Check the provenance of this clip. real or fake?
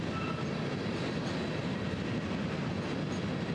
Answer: real